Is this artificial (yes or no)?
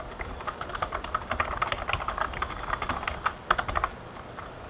no